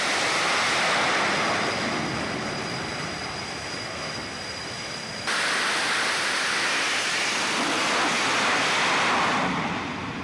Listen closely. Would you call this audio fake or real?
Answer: fake